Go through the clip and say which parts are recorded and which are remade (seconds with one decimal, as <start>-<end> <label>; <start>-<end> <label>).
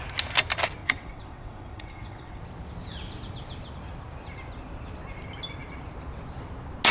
0.0-0.8 recorded; 0.8-2.4 remade; 2.4-6.9 recorded